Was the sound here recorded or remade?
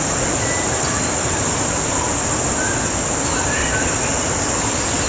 recorded